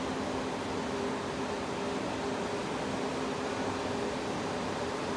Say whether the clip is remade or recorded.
recorded